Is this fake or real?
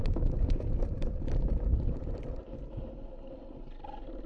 real